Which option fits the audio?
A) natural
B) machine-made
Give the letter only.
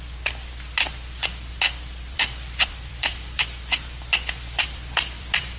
B